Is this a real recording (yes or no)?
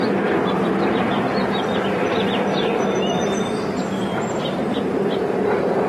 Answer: no